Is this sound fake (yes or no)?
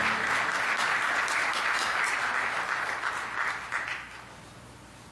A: no